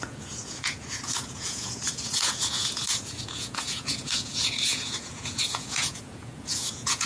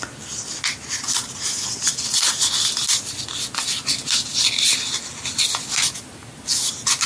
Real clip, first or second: second